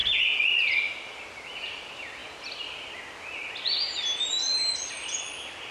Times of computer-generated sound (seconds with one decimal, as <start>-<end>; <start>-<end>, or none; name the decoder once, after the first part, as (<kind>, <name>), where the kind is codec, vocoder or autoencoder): 0.0-2.2 (vocoder, BigVGAN v2); 4.9-5.7